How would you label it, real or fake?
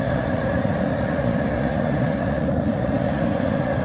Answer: fake